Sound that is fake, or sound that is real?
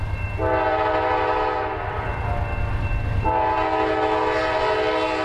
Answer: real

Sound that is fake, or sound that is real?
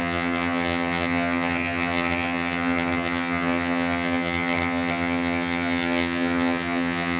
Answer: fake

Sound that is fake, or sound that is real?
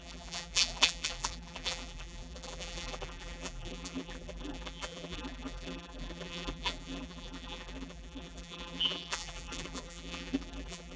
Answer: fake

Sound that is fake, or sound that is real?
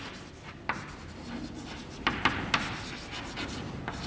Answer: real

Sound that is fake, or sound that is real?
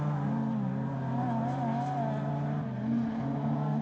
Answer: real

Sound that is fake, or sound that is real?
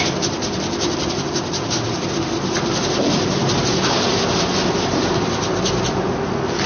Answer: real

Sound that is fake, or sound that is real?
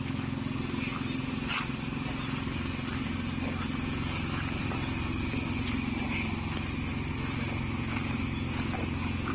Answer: real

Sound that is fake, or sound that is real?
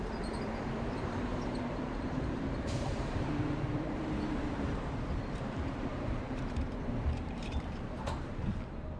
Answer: fake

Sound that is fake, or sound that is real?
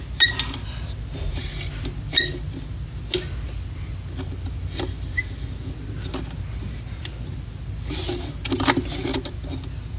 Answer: real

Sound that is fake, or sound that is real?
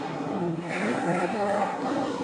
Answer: fake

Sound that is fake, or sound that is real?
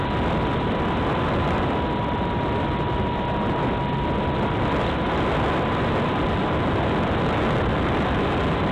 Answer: real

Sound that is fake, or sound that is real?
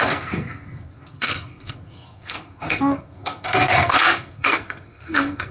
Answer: fake